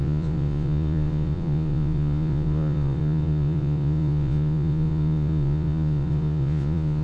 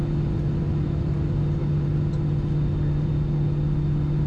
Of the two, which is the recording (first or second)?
second